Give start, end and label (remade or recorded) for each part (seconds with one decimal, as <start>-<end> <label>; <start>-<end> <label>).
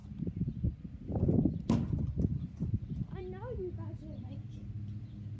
0.0-5.4 recorded